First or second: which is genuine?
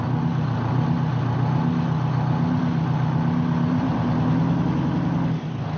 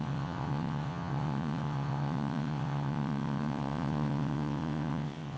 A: first